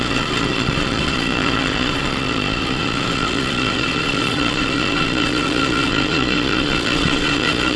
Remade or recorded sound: remade